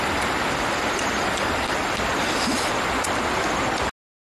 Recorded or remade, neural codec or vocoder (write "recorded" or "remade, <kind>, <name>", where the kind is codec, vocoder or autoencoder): recorded